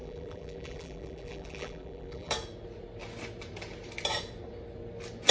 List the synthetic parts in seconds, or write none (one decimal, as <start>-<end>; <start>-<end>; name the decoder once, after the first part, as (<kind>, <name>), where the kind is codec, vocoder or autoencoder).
0.0-2.3 (vocoder, BigVGAN v2)